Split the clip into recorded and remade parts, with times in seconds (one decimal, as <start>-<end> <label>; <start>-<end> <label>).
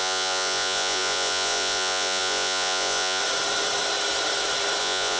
0.0-3.2 remade; 3.2-4.8 recorded; 4.8-5.2 remade